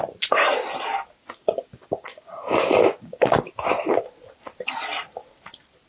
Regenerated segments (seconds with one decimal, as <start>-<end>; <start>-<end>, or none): 1.2-3.4

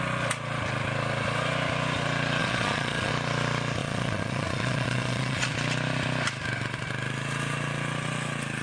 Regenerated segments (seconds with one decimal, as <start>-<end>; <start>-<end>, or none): 2.4-3.1; 3.8-5.5

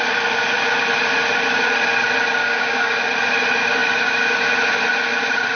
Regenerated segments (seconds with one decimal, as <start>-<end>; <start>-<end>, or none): 2.4-3.0

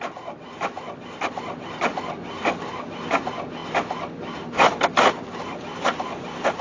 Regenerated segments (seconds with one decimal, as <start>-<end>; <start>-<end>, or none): 3.6-4.7

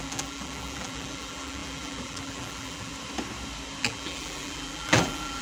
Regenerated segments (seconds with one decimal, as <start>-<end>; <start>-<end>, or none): 0.0-2.9; 3.8-5.4

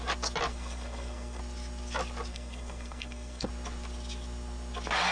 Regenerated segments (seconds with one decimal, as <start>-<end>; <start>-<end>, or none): 0.5-1.4; 2.3-3.5

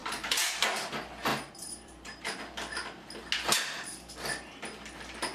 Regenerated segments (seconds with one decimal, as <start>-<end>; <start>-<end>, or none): 0.0-0.9; 1.3-2.4

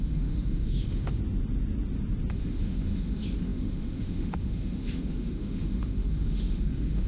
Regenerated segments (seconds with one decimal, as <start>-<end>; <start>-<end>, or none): 0.0-1.2; 2.3-7.1